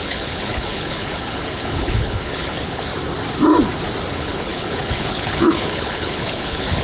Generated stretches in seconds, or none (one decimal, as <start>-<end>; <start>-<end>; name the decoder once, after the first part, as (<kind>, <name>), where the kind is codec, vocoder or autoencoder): 0.0-2.9 (codec, HILCodec); 4.1-6.8